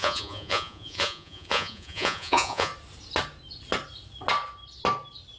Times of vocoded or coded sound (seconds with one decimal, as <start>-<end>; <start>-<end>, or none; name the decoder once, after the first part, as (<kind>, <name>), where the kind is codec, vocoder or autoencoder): 0.0-2.7 (vocoder, Vocos)